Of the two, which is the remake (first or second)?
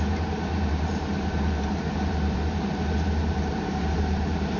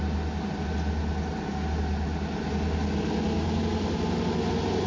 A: first